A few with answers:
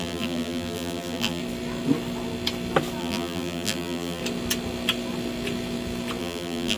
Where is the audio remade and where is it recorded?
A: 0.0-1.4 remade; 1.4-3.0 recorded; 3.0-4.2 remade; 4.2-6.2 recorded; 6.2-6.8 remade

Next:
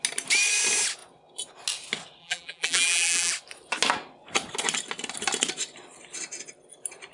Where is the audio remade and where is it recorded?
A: 0.0-2.2 recorded; 2.2-3.3 remade; 3.3-7.1 recorded

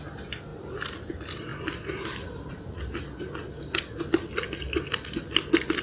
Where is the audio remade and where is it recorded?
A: 0.0-1.5 recorded; 1.5-2.5 remade; 2.5-5.8 recorded

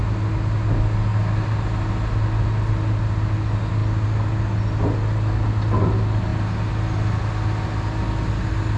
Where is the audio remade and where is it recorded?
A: 0.0-8.8 recorded

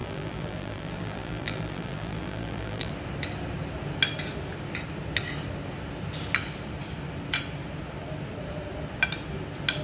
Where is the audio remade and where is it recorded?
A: 0.0-2.9 remade; 2.9-9.8 recorded